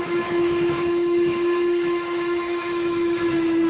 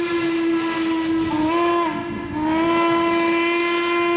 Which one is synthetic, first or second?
first